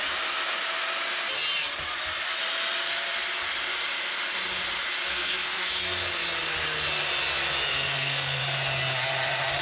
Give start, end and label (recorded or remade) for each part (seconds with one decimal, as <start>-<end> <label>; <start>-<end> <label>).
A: 0.0-5.1 recorded; 5.1-5.8 remade; 5.8-7.7 recorded; 7.7-8.4 remade; 8.4-9.6 recorded